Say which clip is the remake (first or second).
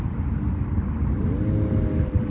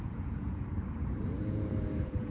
second